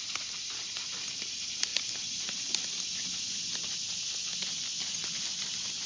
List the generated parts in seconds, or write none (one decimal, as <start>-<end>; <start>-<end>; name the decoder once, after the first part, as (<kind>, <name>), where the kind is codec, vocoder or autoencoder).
none